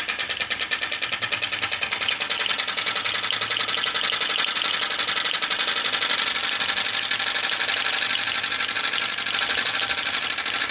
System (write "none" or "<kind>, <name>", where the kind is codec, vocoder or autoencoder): none